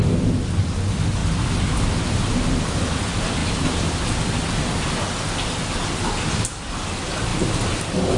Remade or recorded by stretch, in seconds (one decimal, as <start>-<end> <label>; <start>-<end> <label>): 0.0-8.2 recorded